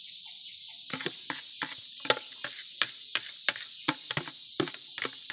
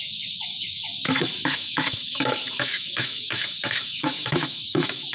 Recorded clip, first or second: first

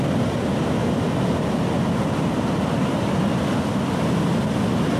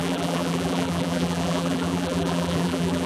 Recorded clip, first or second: first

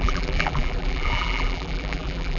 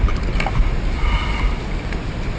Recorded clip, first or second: second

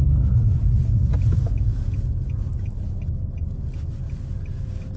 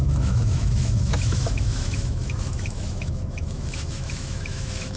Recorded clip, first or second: first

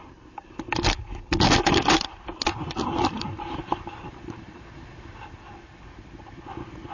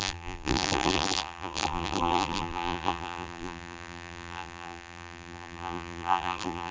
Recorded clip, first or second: first